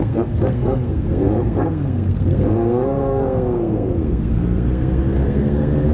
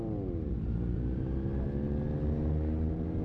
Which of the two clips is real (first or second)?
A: second